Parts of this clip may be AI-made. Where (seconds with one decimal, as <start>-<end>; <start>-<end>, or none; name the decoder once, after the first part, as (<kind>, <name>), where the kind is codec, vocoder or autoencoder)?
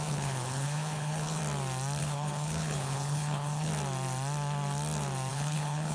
0.0-1.4 (codec, HILCodec); 2.0-3.7; 5.3-5.9